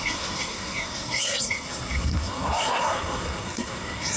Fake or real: fake